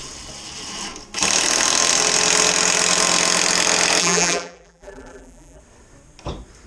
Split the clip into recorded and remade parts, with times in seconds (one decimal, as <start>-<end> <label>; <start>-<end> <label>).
0.0-4.0 recorded; 4.0-5.6 remade; 5.6-6.7 recorded